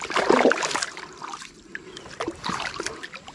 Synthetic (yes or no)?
no